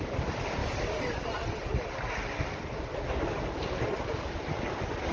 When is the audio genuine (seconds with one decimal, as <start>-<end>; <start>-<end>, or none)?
0.0-5.1